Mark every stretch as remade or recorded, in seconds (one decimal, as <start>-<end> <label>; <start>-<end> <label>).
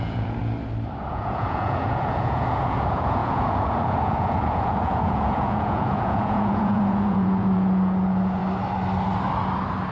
0.0-0.4 remade; 0.4-1.1 recorded; 1.1-8.4 remade; 8.4-9.9 recorded